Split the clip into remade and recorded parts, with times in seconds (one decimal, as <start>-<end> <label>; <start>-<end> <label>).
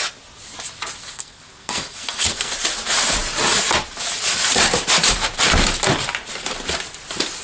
0.0-1.0 recorded; 1.0-2.5 remade; 2.5-7.4 recorded